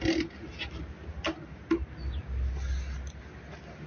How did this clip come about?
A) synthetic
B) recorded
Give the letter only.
B